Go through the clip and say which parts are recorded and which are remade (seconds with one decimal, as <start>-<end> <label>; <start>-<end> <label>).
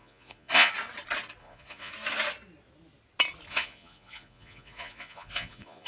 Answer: 0.0-0.7 remade; 0.7-1.4 recorded; 1.4-1.9 remade; 1.9-3.5 recorded; 3.5-5.9 remade